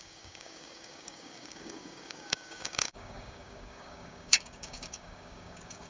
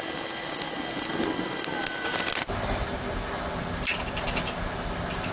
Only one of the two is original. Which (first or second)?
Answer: second